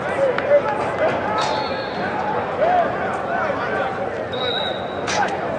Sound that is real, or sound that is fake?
real